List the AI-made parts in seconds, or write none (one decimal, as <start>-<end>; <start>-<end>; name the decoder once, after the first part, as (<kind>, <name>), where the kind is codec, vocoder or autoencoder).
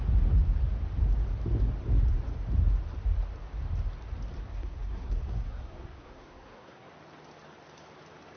4.5-6.9 (codec, SNAC)